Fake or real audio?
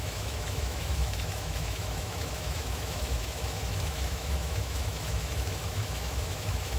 fake